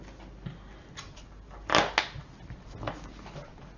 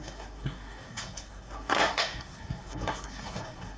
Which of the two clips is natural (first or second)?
first